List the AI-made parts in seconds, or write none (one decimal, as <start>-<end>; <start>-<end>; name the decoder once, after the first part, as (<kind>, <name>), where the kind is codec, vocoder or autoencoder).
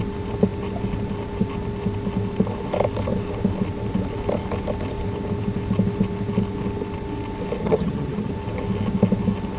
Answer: 7.6-8.3 (vocoder, HiFi-GAN)